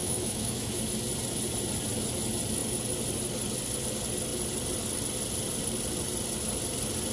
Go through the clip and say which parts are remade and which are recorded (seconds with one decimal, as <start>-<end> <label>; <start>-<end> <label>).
0.0-0.8 remade; 0.8-7.1 recorded